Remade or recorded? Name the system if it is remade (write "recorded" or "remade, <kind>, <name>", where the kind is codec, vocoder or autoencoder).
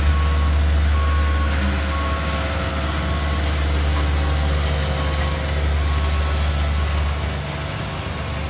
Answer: recorded